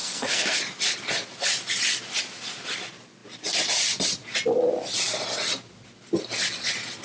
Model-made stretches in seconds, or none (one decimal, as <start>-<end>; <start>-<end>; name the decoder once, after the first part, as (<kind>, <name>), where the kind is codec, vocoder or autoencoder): 0.0-0.6 (codec, SNAC)